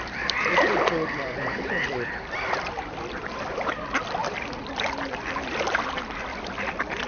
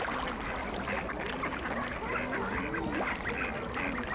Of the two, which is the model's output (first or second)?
first